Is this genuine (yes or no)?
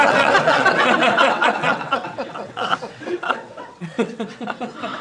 no